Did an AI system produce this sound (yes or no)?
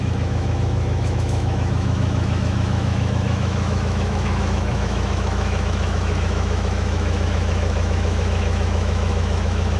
yes